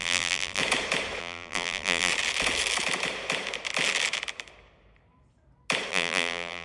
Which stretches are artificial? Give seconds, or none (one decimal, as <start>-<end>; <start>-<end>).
0.0-0.6; 1.2-2.1; 5.9-6.6